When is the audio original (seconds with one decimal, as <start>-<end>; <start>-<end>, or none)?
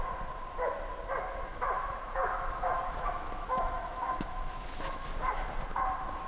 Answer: 0.0-1.5; 5.1-6.3